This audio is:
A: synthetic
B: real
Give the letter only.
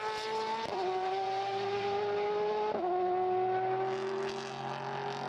B